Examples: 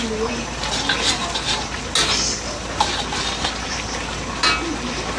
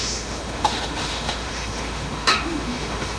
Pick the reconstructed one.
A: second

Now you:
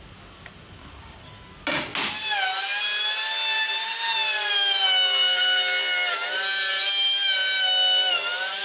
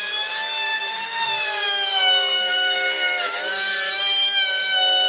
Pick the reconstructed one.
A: second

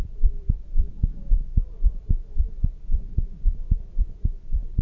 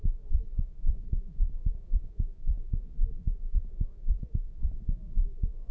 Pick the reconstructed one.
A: second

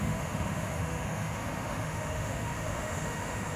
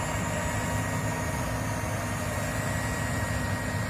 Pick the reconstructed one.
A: first